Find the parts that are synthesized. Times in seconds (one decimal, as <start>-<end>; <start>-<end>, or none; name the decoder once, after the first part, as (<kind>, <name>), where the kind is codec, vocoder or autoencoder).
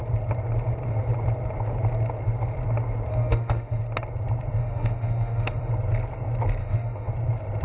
3.1-3.8 (autoencoder, DAC-VAE); 4.6-5.7; 6.6-7.1